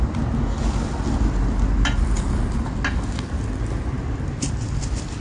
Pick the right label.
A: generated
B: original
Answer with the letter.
B